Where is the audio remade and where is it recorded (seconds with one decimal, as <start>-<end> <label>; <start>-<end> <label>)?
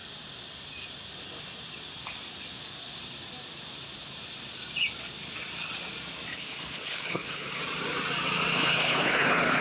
0.0-6.3 recorded; 6.3-7.6 remade; 7.6-8.5 recorded; 8.5-9.6 remade